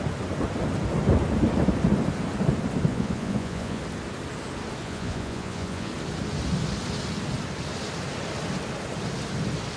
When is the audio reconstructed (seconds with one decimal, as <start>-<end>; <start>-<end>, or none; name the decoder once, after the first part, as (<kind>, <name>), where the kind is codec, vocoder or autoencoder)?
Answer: 2.9-3.8 (vocoder, Vocos); 4.8-5.9